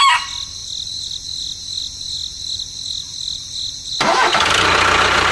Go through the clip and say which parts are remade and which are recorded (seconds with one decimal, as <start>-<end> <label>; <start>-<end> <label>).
0.0-5.3 recorded

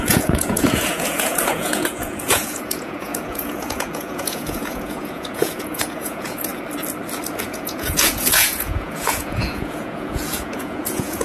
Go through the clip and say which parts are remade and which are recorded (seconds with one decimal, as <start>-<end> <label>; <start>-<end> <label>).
0.0-6.5 remade; 6.5-7.4 recorded; 7.4-11.2 remade

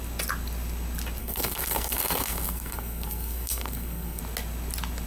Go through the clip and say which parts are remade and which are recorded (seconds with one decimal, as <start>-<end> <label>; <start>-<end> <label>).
0.0-1.2 recorded; 1.2-4.2 remade; 4.2-5.1 recorded

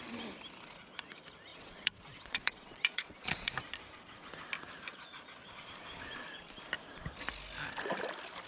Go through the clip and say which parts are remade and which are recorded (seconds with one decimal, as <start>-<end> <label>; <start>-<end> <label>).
0.0-1.5 recorded; 1.5-3.5 remade; 3.5-4.9 recorded; 4.9-5.7 remade; 5.7-8.5 recorded

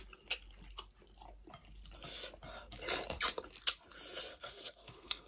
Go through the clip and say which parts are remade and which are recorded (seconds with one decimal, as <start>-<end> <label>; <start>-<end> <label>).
0.0-4.3 recorded; 4.3-5.3 remade

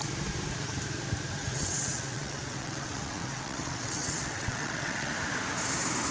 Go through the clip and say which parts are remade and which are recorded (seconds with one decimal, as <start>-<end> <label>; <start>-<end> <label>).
0.0-1.4 recorded; 1.4-5.1 remade; 5.1-6.1 recorded

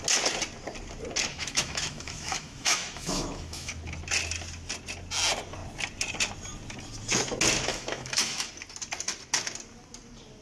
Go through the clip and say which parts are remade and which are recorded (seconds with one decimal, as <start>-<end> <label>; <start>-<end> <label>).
0.0-1.3 recorded; 1.3-3.7 remade; 3.7-7.7 recorded; 7.7-8.5 remade; 8.5-10.4 recorded